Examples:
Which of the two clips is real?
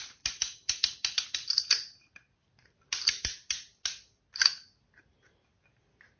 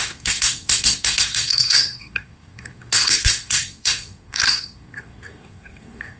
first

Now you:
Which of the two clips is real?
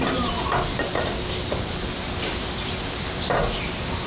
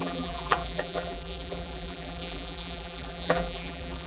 first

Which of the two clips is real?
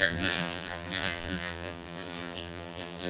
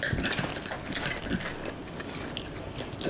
second